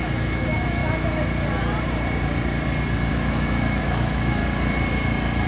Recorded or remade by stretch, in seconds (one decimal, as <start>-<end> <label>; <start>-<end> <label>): 0.0-0.8 remade; 0.8-3.1 recorded; 3.1-4.4 remade; 4.4-5.5 recorded